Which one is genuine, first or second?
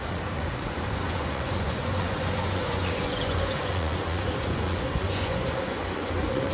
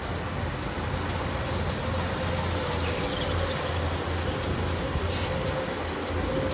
second